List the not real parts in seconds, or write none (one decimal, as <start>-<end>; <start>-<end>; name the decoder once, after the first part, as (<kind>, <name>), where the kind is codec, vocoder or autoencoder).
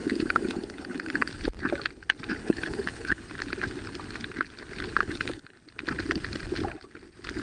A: 0.0-1.3 (codec, HILCodec); 2.4-3.2; 5.0-5.6